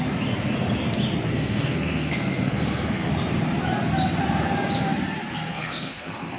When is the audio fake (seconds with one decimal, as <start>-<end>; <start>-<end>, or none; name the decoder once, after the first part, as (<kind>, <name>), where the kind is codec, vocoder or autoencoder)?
1.3-3.1 (codec, SNAC); 5.5-6.4